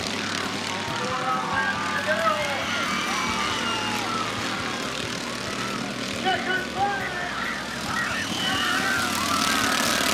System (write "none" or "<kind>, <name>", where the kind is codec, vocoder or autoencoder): none